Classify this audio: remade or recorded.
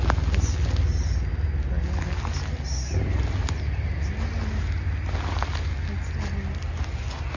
recorded